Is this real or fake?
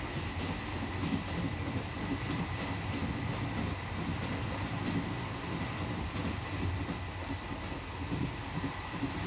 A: real